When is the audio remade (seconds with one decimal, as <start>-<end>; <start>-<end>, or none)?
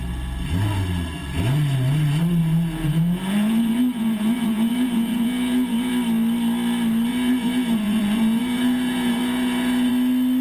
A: 2.4-5.9; 7.1-9.9